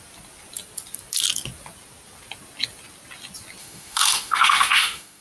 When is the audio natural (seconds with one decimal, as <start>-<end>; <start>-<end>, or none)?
0.0-3.6